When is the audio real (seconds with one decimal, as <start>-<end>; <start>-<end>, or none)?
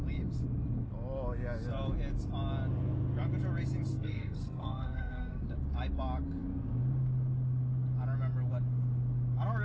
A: 0.0-3.9; 5.4-9.6